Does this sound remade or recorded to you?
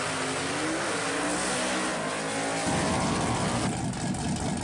recorded